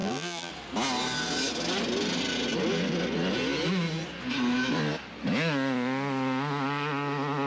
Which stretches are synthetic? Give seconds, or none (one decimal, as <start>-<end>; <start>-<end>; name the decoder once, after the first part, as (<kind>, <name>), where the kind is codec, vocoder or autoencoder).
0.0-0.5 (vocoder, BigVGAN v2)